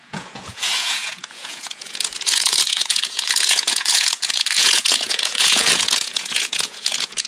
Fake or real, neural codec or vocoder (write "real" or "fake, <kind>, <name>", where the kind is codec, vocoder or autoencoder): fake, vocoder, Vocos